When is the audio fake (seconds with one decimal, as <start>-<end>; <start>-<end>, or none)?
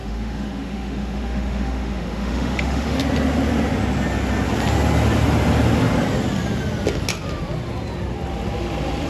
0.0-3.0